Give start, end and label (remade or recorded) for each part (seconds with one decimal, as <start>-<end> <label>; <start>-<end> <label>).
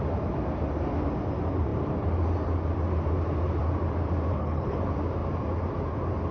0.0-4.3 recorded; 4.3-4.8 remade; 4.8-6.3 recorded